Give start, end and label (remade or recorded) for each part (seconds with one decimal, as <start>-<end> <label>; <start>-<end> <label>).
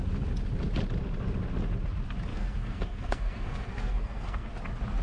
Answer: 0.0-2.3 recorded; 2.3-4.5 remade; 4.5-5.0 recorded